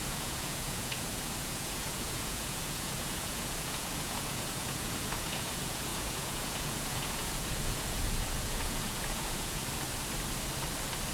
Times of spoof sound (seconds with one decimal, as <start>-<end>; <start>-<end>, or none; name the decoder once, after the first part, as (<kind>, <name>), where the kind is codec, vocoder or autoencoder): 0.0-9.6 (vocoder, Vocos)